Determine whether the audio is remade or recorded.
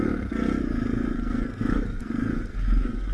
remade